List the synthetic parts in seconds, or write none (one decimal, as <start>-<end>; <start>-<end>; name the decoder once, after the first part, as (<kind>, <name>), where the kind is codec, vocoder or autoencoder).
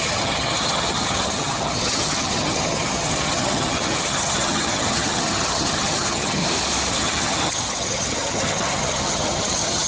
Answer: 0.0-6.4 (vocoder, HiFi-GAN); 6.9-9.9